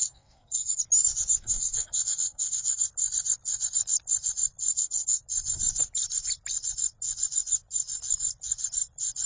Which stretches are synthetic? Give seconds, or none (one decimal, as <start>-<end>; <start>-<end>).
0.0-0.8; 1.4-2.8; 4.7-5.2